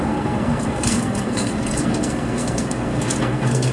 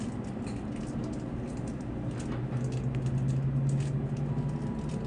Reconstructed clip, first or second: first